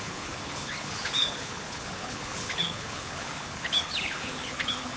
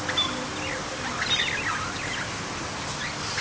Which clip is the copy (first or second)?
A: first